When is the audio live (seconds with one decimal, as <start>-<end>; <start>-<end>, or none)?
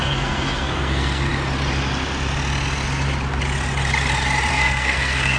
1.3-4.5